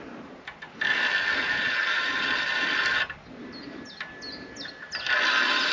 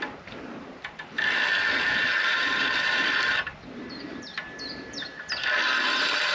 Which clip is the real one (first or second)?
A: first